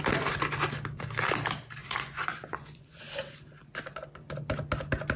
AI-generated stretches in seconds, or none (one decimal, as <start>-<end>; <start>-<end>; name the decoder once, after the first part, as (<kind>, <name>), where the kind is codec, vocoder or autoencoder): 1.8-3.0 (vocoder, Vocos)